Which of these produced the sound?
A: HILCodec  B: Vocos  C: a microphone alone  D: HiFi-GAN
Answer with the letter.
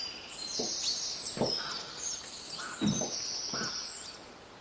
C